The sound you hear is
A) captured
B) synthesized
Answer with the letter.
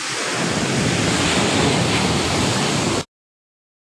A